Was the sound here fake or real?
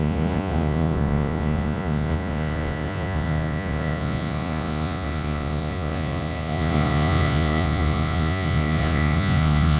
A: fake